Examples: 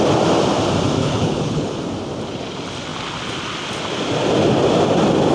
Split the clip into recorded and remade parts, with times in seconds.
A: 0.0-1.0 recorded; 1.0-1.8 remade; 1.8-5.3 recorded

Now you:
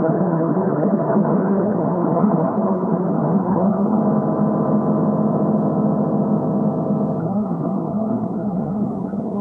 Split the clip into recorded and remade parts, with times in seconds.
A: 0.0-4.0 remade; 4.0-7.2 recorded; 7.2-9.4 remade

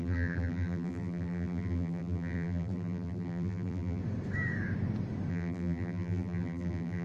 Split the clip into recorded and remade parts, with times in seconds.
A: 0.0-4.0 remade; 4.0-5.3 recorded; 5.3-7.0 remade

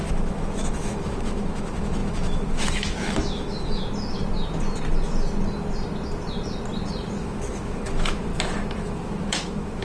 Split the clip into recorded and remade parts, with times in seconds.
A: 0.0-3.8 remade; 3.8-7.2 recorded; 7.2-8.3 remade; 8.3-8.8 recorded; 8.8-9.8 remade

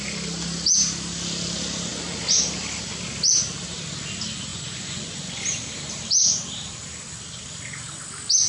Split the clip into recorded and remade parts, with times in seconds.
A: 0.0-4.5 recorded; 4.5-5.2 remade; 5.2-8.5 recorded

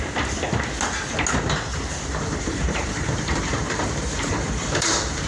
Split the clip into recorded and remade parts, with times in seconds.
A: 0.0-1.7 recorded; 1.7-5.3 remade

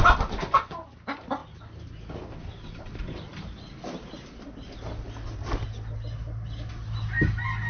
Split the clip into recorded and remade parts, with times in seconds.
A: 0.0-7.7 recorded

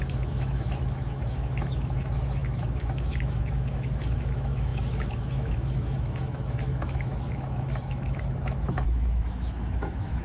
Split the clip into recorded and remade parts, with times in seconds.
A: 0.0-10.2 remade